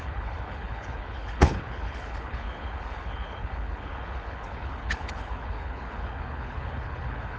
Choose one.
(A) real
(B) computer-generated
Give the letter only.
B